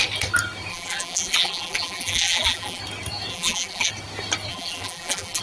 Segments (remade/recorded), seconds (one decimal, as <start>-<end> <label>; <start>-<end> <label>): 0.0-0.7 recorded; 0.7-2.8 remade; 2.8-3.3 recorded; 3.3-3.9 remade; 3.9-4.5 recorded; 4.5-5.4 remade